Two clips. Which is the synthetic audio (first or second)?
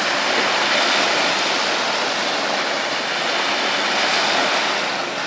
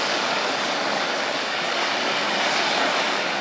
second